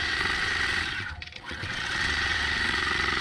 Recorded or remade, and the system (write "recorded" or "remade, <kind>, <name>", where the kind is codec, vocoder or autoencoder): remade, vocoder, WaveNeXt